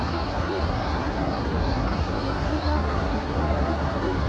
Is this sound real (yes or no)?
no